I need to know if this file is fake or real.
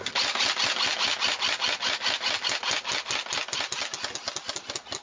real